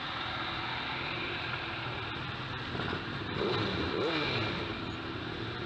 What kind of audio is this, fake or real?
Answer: real